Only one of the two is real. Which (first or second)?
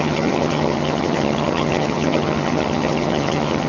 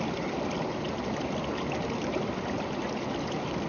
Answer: second